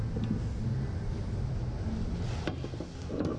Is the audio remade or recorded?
recorded